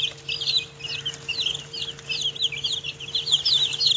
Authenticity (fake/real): real